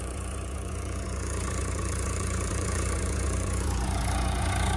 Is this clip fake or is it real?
fake